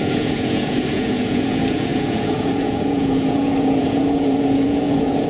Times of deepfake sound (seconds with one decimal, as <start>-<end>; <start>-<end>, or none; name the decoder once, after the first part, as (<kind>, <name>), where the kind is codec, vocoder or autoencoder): 0.0-5.3 (vocoder, Vocos)